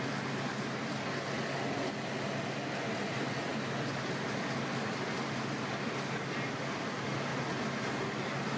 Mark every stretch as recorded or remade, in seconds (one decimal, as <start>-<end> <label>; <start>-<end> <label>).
0.0-8.6 recorded